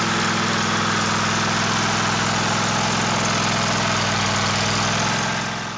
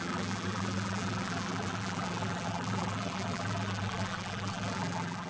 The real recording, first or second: first